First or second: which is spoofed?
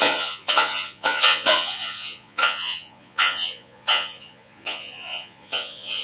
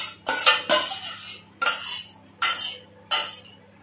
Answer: first